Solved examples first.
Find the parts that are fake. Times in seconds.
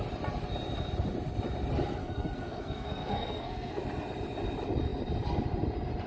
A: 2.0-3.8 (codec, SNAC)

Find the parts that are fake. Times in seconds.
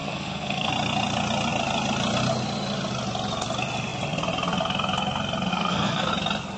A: 0.0-0.7 (codec, SNAC); 5.5-6.1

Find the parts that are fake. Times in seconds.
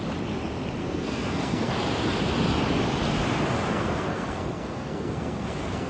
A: 0.8-1.7 (codec, SNAC); 3.7-5.9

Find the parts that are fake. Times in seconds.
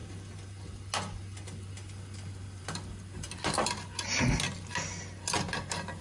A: none